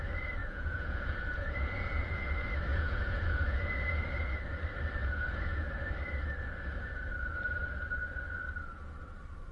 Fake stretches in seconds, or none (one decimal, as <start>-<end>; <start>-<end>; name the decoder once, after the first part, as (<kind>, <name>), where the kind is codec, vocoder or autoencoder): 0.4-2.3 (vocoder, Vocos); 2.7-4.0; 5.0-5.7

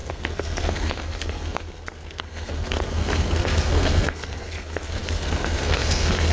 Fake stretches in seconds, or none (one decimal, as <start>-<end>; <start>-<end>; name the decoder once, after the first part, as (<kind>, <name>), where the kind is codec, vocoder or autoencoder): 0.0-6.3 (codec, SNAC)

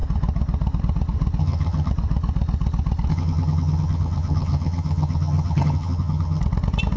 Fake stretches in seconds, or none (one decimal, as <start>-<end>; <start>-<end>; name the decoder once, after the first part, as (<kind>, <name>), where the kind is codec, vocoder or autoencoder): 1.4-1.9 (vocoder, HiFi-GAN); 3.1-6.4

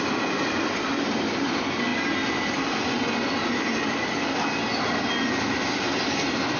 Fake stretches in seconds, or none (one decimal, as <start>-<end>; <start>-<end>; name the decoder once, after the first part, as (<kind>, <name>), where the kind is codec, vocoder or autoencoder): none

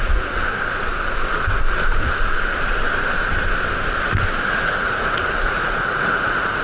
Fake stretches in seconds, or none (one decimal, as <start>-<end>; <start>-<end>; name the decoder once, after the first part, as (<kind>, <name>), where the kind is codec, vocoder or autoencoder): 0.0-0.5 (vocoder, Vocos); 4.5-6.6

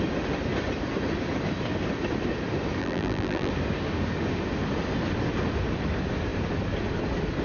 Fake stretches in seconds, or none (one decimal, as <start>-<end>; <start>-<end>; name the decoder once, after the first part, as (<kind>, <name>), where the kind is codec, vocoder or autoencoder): 2.8-3.5 (vocoder, BigVGAN v2)

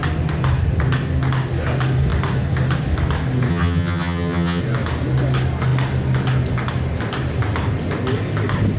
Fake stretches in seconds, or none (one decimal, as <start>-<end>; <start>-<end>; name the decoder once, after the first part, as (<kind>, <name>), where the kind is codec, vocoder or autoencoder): 3.5-4.6 (vocoder, HiFi-GAN)

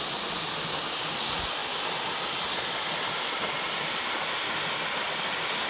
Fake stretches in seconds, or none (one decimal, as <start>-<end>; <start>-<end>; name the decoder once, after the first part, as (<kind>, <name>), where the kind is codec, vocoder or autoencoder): none